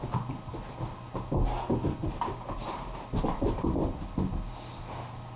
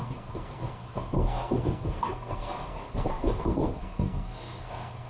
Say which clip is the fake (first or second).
second